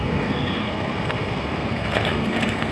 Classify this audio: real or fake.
fake